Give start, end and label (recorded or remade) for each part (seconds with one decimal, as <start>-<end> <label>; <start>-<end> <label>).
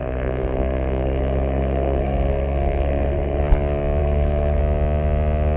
0.0-3.4 remade; 3.4-4.0 recorded; 4.0-4.6 remade; 4.6-5.6 recorded